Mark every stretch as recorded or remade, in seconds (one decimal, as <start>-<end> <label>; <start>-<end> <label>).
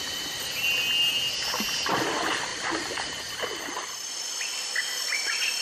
0.0-5.6 recorded